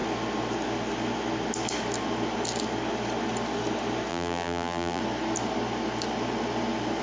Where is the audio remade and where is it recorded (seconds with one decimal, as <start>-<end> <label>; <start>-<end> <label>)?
0.0-4.1 recorded; 4.1-5.0 remade; 5.0-7.0 recorded